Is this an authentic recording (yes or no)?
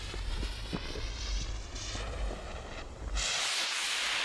yes